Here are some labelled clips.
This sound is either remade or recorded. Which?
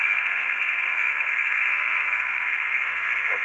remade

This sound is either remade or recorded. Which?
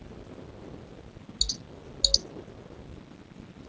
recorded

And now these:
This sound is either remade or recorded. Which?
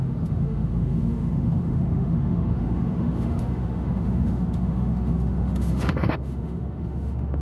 remade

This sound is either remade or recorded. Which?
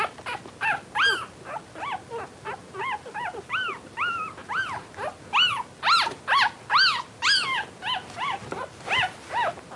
recorded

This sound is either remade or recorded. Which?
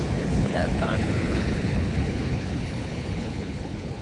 remade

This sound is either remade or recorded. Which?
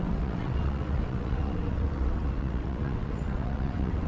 remade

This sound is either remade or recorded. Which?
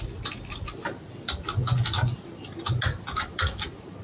recorded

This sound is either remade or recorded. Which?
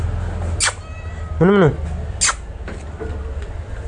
recorded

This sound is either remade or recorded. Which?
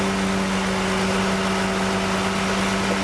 recorded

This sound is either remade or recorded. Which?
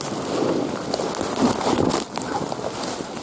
recorded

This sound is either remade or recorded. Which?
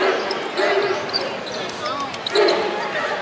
recorded